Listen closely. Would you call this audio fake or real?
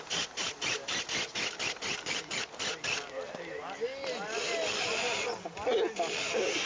real